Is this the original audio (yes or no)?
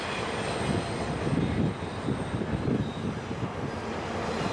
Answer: yes